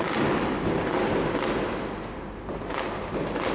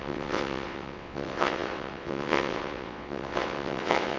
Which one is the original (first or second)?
first